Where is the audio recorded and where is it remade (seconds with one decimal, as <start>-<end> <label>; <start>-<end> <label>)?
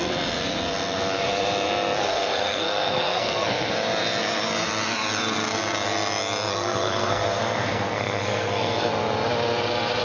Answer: 0.0-2.0 recorded; 2.0-3.7 remade; 3.7-6.5 recorded; 6.5-8.9 remade; 8.9-10.0 recorded